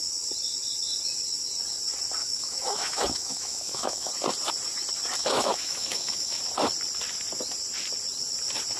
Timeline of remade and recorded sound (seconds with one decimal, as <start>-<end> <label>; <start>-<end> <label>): 0.0-2.2 recorded; 2.2-4.1 remade; 4.1-5.2 recorded; 5.2-6.4 remade; 6.4-8.8 recorded